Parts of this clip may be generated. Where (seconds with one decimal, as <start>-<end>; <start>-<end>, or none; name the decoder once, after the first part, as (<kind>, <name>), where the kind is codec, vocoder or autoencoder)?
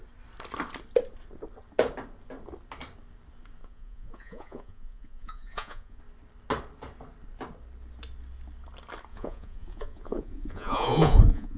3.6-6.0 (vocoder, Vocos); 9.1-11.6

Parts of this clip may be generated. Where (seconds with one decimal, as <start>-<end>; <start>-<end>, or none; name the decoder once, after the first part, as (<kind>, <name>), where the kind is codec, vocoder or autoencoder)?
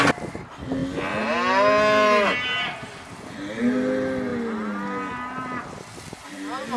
none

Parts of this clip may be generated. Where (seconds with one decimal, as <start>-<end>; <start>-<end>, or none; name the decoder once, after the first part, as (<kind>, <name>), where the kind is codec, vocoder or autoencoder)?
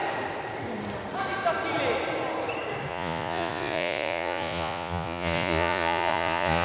2.9-6.6 (vocoder, Vocos)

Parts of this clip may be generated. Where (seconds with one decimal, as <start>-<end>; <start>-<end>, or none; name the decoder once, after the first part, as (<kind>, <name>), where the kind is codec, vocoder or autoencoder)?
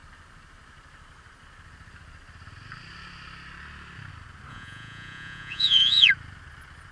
4.5-6.1 (vocoder, Vocos)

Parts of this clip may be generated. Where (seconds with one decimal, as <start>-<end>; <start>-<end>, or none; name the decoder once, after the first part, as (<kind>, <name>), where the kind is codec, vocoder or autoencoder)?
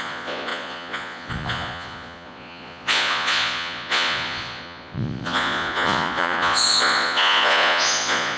0.0-8.4 (vocoder, Vocos)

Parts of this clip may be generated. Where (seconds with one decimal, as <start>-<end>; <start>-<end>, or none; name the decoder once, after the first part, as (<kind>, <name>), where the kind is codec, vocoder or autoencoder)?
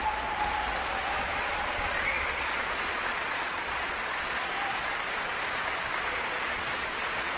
1.2-4.8 (vocoder, Vocos); 6.0-7.4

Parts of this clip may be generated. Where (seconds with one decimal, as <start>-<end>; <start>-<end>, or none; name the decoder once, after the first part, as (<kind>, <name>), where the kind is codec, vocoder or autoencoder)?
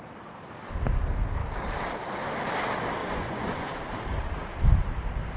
3.0-3.7 (vocoder, Vocos)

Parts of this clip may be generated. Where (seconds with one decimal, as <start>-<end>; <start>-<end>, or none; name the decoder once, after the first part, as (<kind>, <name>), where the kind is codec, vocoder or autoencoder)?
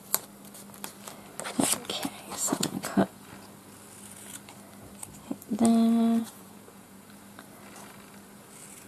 2.3-3.3 (vocoder, Vocos); 6.2-7.1